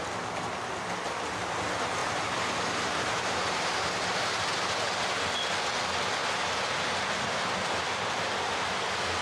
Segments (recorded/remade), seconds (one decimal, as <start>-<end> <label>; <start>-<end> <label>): 0.0-2.0 recorded; 2.0-3.7 remade; 3.7-9.2 recorded